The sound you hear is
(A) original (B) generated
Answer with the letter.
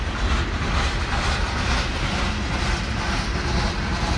A